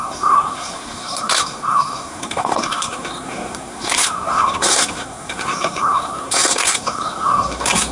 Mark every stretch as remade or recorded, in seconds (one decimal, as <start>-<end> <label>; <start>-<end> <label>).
0.0-7.9 remade

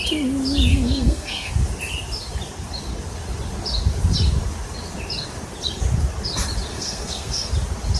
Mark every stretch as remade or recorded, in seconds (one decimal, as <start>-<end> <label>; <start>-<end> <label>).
0.0-0.7 recorded; 0.7-1.5 remade; 1.5-6.7 recorded; 6.7-7.5 remade; 7.5-8.0 recorded